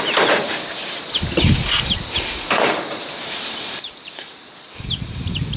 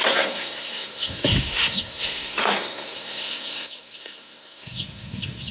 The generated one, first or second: second